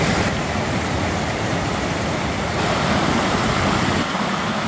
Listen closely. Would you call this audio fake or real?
real